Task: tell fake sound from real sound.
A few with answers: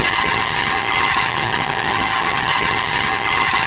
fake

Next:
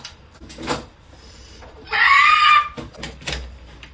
real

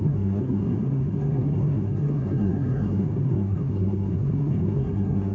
fake